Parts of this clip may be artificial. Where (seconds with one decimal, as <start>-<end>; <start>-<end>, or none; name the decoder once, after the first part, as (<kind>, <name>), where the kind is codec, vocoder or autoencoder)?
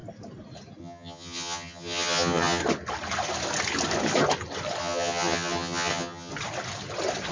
0.8-2.6 (vocoder, HiFi-GAN); 4.8-6.3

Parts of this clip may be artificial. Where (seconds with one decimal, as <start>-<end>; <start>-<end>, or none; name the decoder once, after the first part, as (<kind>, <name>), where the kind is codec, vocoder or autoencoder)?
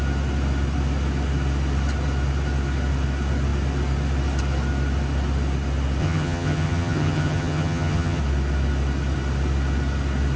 6.0-8.2 (vocoder, HiFi-GAN)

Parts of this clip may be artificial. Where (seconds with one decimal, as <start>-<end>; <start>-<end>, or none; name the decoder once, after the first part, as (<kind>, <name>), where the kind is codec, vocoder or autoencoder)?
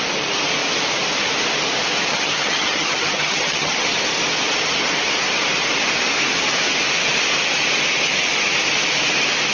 2.1-3.8 (vocoder, HiFi-GAN)